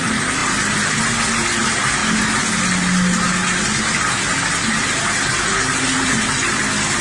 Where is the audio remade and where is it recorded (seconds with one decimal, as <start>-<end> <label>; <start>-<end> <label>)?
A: 0.0-7.0 recorded